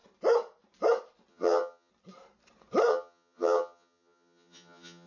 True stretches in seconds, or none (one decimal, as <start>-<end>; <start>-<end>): 0.0-1.3; 1.9-2.9